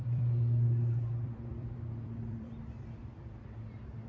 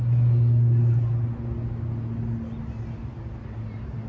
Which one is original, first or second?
second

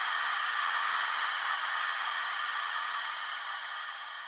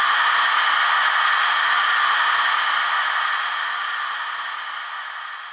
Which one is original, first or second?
second